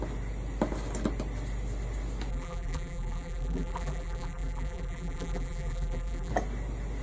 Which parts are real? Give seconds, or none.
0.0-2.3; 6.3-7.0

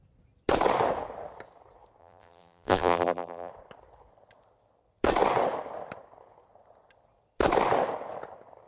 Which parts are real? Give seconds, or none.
0.0-2.0; 3.5-8.7

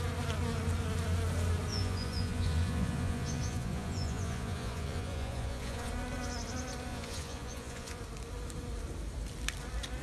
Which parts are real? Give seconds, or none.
0.0-1.7; 5.9-6.9; 8.0-10.0

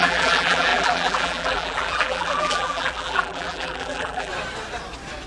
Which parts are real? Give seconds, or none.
4.3-5.3

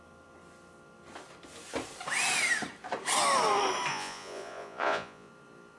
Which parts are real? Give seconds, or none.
0.0-3.9; 5.3-5.8

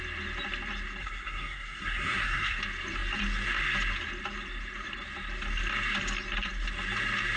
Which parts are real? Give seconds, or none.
0.0-1.0; 2.6-7.4

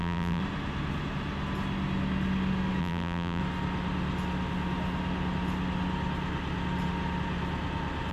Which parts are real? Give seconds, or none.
0.4-2.8; 3.4-8.1

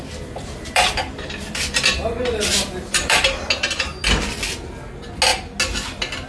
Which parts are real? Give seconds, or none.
3.5-6.3